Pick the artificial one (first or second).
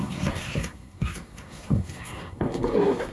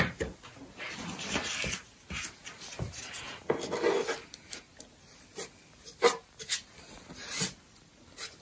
first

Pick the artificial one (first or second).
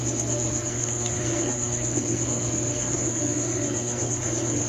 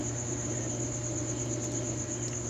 first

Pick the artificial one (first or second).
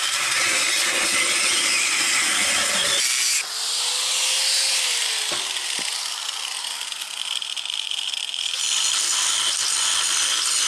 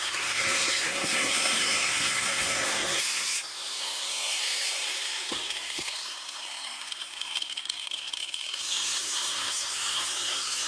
second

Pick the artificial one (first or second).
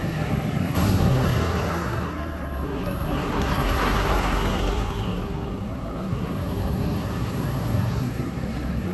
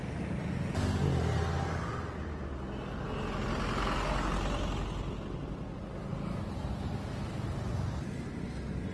first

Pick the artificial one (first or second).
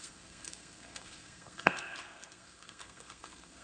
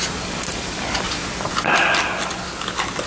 first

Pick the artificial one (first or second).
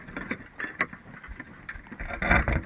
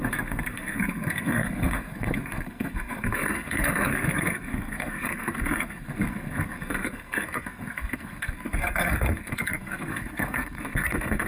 second